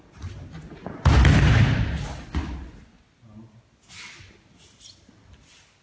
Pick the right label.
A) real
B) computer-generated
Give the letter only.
A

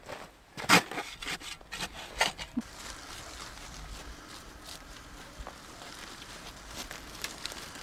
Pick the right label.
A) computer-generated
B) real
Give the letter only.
B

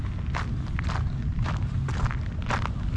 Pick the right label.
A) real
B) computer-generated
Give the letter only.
A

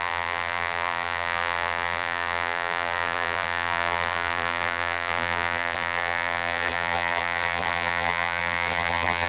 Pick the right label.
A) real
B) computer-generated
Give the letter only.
B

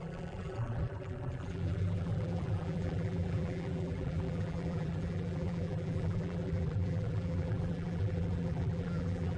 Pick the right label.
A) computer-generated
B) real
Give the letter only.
A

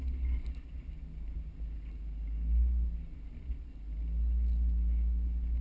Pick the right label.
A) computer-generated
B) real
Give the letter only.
B